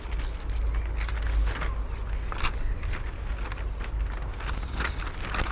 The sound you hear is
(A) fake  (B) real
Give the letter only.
B